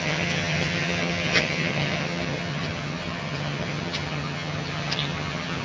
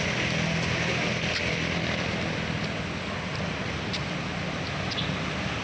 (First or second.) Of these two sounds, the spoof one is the first